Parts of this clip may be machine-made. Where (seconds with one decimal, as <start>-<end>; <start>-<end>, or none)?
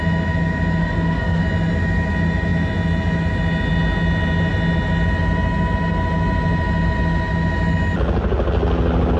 0.8-1.4